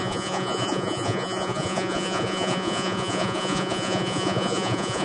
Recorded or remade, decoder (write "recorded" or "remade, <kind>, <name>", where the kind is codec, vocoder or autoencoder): remade, vocoder, Vocos